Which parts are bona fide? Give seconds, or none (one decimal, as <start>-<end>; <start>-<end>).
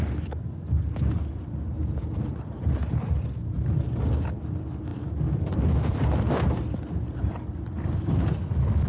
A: 0.0-8.9